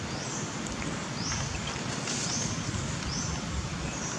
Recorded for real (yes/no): yes